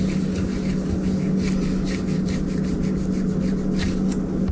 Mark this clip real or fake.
real